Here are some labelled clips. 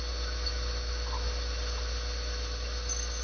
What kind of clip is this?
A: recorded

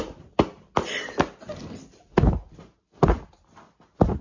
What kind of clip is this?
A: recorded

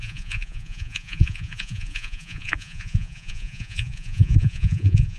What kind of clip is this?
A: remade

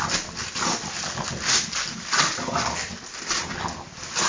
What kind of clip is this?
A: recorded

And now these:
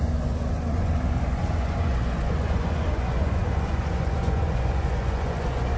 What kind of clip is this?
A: remade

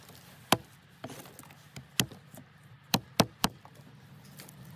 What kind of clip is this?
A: recorded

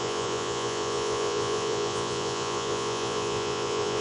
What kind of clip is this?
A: remade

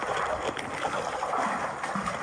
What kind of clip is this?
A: recorded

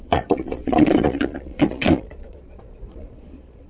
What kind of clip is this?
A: remade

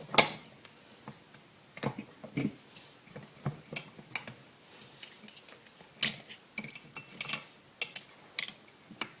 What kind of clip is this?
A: recorded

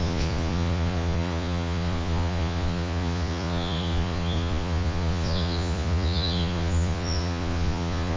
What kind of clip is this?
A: remade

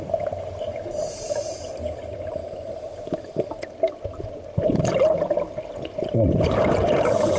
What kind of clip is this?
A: recorded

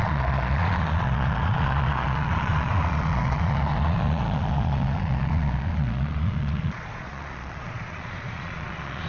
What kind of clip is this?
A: remade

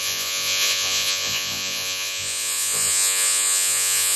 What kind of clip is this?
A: remade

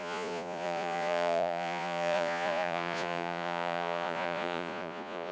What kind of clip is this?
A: remade